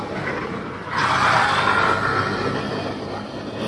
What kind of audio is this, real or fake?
real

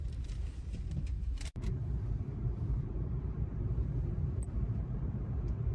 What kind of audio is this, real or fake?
fake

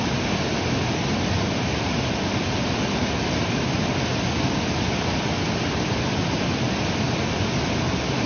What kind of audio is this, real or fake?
real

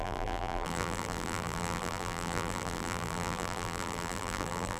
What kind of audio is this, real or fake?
fake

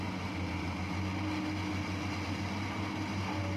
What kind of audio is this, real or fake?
real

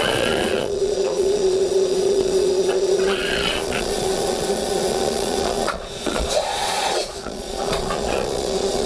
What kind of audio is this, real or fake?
fake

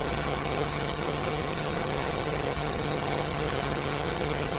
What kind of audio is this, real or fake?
fake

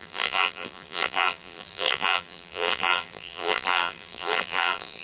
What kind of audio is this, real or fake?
fake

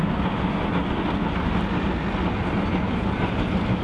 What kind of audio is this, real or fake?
real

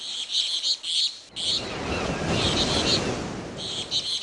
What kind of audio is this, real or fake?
real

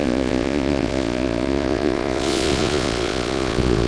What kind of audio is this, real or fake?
fake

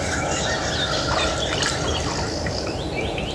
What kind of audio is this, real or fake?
real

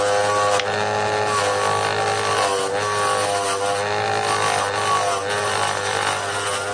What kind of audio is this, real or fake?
real